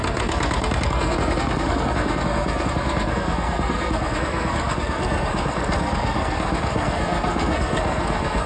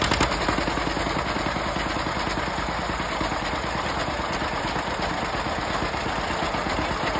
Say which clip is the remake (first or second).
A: first